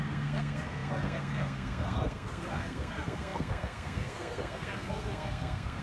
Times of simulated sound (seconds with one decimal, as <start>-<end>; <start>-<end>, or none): 0.0-5.8